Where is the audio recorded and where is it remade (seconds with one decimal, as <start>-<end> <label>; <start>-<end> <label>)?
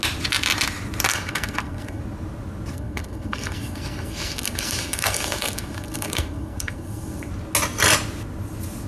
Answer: 0.0-1.1 recorded; 1.1-2.0 remade; 2.0-2.7 recorded; 2.7-7.3 remade; 7.3-8.9 recorded